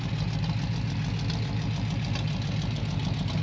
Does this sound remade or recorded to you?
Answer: recorded